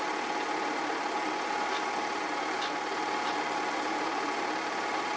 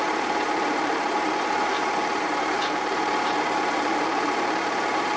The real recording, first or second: first